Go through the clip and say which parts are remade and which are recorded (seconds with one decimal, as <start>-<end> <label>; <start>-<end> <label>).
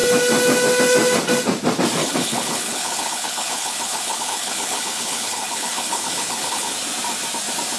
0.0-2.0 recorded; 2.0-6.7 remade; 6.7-7.8 recorded